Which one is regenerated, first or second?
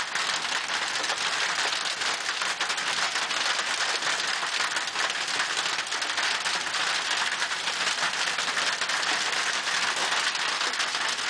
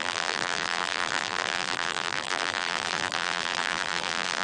second